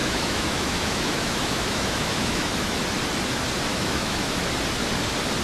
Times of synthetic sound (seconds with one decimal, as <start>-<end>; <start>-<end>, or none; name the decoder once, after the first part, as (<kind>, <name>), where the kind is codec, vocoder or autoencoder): 0.0-2.8 (autoencoder, DAC-VAE); 3.7-4.4